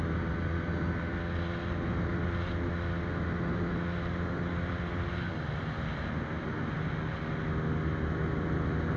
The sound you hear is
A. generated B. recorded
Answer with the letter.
B